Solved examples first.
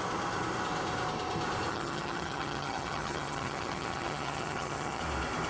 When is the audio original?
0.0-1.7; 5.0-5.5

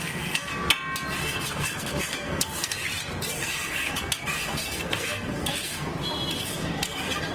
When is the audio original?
0.5-1.2; 2.9-3.4; 5.9-6.4

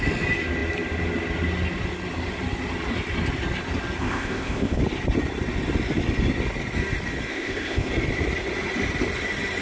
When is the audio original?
0.0-4.0; 4.8-7.3; 7.9-9.6

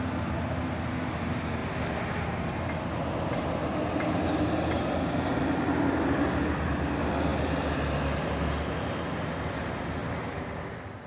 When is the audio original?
0.0-11.1

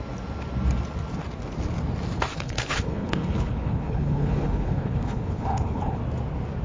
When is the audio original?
0.0-2.3; 6.0-6.6